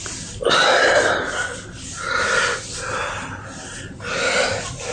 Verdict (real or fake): real